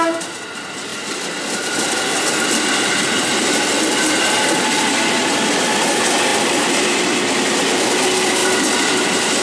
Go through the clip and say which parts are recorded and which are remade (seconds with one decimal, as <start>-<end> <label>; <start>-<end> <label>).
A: 0.0-9.4 recorded